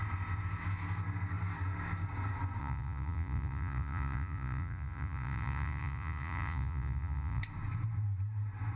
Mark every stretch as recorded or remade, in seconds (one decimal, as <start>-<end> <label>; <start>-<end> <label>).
0.0-2.6 recorded; 2.6-7.4 remade; 7.4-8.8 recorded